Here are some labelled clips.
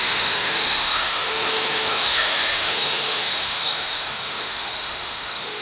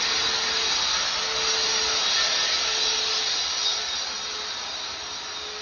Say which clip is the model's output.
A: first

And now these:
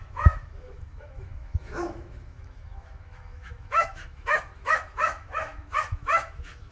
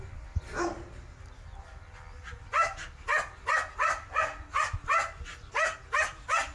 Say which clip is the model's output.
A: first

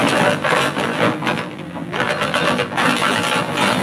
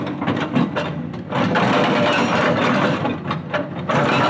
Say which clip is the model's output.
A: first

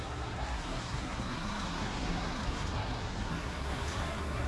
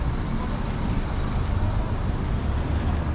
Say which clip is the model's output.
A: first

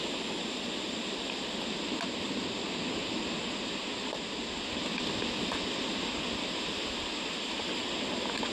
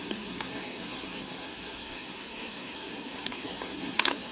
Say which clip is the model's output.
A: second